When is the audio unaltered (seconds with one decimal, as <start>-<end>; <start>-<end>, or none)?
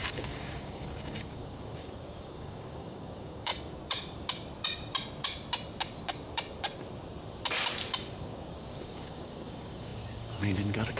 3.5-8.2